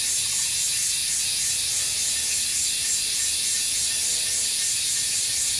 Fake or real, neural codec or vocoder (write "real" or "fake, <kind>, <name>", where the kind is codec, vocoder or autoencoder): fake, vocoder, BigVGAN v2